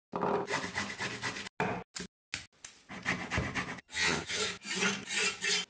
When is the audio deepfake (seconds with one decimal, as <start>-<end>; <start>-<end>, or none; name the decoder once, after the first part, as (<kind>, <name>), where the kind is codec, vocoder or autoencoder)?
3.8-4.4 (vocoder, HiFi-GAN)